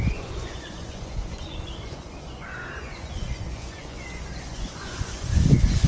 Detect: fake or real fake